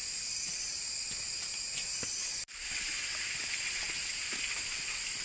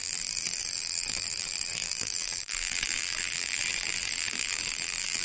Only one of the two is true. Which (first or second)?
first